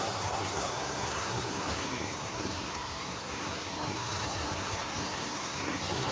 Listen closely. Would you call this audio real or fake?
fake